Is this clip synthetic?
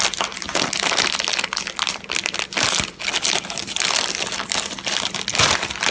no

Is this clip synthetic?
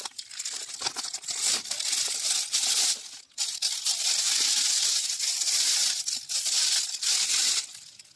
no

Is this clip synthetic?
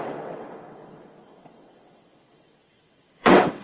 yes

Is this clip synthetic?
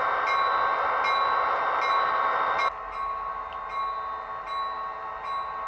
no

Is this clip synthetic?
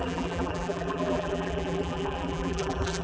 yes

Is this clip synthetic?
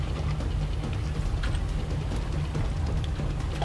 no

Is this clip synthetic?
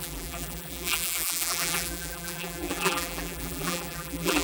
yes